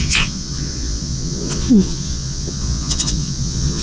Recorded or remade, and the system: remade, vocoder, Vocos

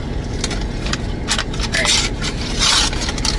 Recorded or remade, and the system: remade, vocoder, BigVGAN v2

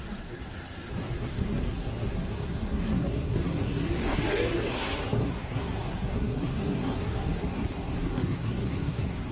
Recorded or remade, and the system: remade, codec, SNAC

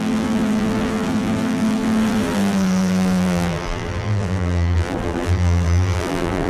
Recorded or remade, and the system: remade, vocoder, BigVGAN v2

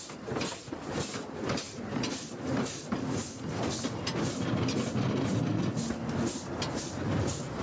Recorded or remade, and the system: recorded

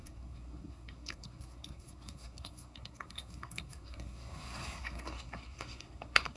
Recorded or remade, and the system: remade, codec, SNAC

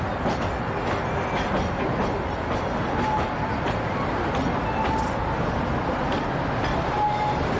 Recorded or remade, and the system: recorded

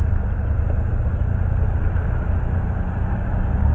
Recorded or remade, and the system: recorded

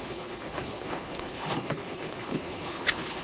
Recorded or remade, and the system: remade, codec, HILCodec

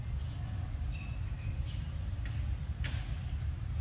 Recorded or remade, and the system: recorded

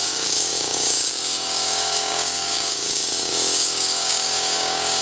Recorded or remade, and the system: remade, codec, DAC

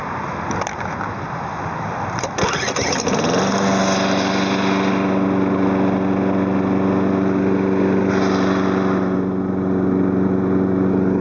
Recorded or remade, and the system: recorded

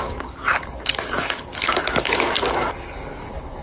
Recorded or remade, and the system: remade, codec, DAC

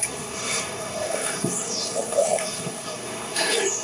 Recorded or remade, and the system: remade, codec, SNAC